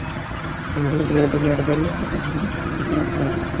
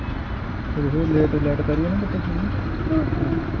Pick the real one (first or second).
second